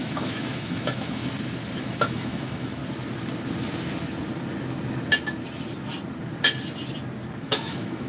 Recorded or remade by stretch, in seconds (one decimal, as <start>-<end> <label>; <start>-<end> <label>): 0.0-1.2 remade; 1.2-1.8 recorded; 1.8-2.8 remade; 2.8-7.4 recorded; 7.4-8.1 remade